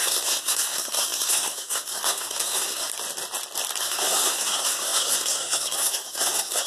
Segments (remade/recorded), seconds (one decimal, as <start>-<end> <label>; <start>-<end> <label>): 0.0-2.9 remade; 2.9-3.8 recorded; 3.8-6.7 remade